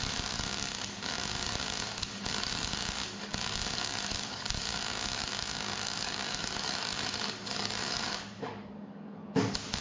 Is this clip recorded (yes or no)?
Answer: no